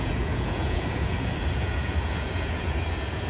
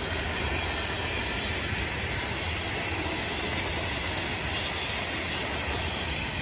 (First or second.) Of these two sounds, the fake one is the first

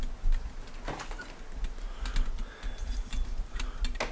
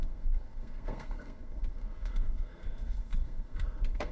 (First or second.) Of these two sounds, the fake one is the second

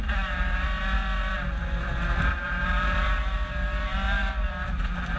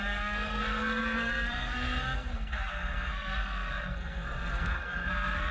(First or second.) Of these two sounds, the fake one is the second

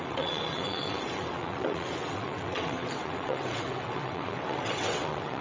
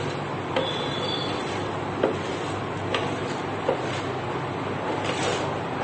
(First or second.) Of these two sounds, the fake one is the first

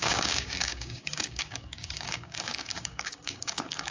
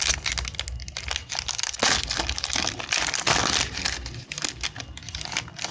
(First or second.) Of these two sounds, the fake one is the first